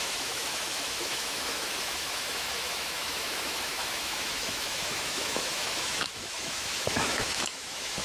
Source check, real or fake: fake